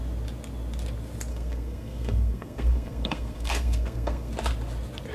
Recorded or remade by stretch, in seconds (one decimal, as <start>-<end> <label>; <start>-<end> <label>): 0.0-1.3 recorded; 1.3-4.3 remade; 4.3-5.1 recorded